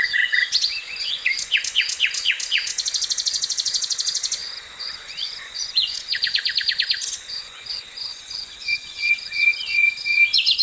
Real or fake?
fake